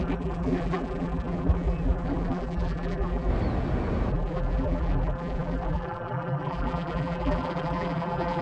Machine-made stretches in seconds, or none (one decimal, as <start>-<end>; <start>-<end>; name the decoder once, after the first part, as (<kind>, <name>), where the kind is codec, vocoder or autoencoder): 0.0-3.3 (vocoder, BigVGAN v2); 4.1-8.4